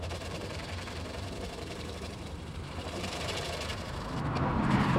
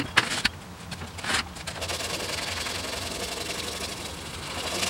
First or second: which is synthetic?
first